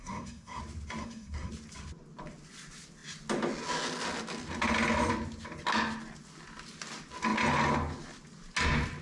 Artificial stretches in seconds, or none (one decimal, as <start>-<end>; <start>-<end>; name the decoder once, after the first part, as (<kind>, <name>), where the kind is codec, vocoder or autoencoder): 0.0-0.6 (codec, SNAC); 1.0-1.5